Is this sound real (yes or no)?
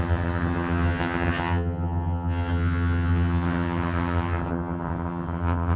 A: no